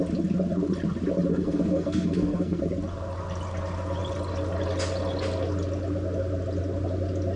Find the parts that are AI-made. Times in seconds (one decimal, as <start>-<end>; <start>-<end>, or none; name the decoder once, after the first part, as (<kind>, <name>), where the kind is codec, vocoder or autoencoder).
1.3-2.6 (codec, SNAC)